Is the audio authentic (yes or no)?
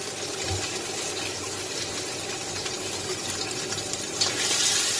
yes